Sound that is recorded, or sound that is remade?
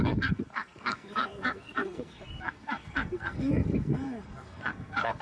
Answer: remade